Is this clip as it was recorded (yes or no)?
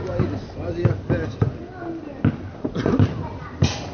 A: yes